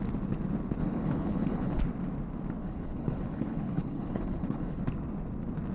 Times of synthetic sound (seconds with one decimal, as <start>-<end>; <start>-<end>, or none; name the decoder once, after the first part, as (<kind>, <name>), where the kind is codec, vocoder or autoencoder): 0.8-1.8 (codec, HILCodec); 2.6-4.8